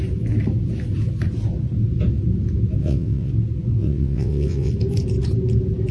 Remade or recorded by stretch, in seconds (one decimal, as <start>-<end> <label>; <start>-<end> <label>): 0.0-2.8 recorded; 2.8-3.3 remade; 3.3-3.8 recorded; 3.8-4.7 remade; 4.7-5.9 recorded

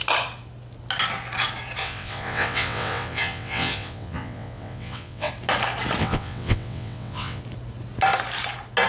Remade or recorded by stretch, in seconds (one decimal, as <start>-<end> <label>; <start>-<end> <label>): 0.0-1.8 recorded; 1.8-5.3 remade; 5.3-6.0 recorded; 6.0-7.4 remade; 7.4-8.9 recorded

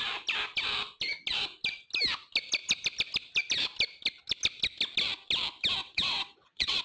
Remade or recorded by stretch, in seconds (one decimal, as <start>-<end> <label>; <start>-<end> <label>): 0.0-5.8 recorded; 5.8-6.8 remade

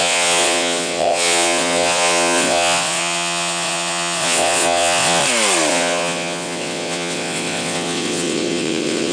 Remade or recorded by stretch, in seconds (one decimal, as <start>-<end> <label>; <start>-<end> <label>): 0.0-5.2 remade; 5.2-5.7 recorded; 5.7-9.1 remade

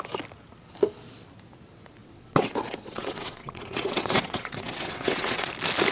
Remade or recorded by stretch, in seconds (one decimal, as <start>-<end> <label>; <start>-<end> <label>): 0.0-2.0 recorded; 2.0-5.5 remade; 5.5-5.9 recorded